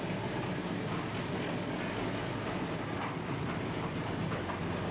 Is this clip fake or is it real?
real